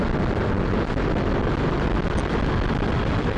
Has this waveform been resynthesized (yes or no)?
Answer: no